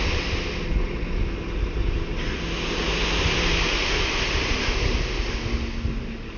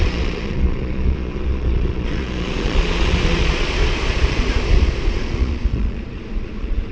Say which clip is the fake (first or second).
second